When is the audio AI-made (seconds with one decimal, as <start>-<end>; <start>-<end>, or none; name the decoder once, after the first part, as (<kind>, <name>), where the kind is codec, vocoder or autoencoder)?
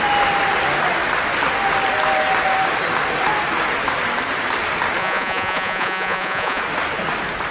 5.0-6.6 (vocoder, Vocos)